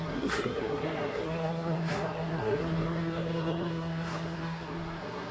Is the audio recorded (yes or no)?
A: no